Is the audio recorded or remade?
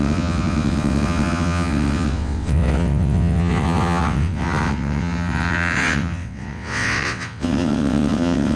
remade